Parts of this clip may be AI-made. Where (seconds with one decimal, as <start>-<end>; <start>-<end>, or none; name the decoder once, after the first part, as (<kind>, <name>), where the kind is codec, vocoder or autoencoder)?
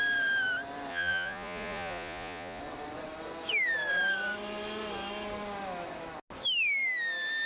0.9-2.6 (vocoder, Vocos)